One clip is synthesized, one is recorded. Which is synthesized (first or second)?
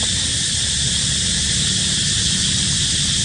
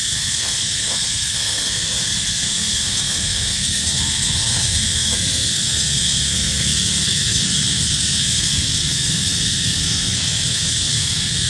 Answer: second